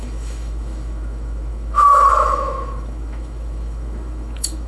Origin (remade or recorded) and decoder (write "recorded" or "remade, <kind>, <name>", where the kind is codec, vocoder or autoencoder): remade, autoencoder, DAC-VAE